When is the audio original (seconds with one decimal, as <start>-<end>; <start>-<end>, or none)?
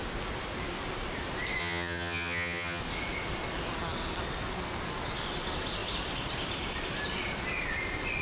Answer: 0.0-1.6; 2.8-8.2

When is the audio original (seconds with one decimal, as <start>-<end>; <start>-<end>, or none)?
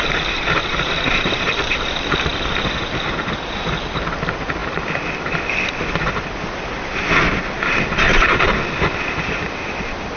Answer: 0.0-10.2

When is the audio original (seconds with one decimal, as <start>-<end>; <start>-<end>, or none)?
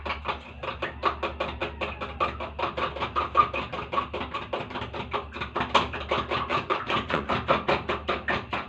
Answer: 0.0-6.5; 7.3-8.7